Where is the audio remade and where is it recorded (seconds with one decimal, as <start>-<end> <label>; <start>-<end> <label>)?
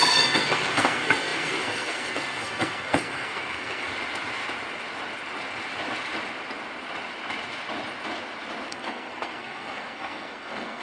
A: 0.0-3.9 remade; 3.9-8.7 recorded; 8.7-10.8 remade